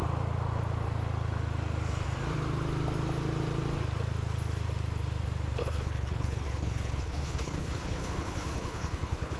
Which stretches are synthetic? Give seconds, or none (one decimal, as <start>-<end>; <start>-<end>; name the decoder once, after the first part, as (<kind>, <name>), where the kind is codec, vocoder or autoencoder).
5.6-9.4 (codec, HILCodec)